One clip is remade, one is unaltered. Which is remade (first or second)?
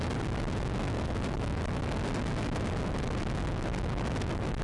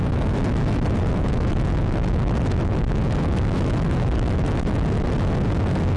second